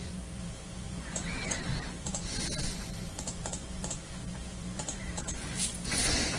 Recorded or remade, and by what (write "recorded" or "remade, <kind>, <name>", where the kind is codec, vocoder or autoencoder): remade, vocoder, Vocos